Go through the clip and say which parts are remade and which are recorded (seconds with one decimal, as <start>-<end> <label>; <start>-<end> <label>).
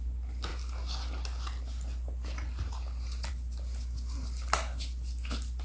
0.0-5.6 recorded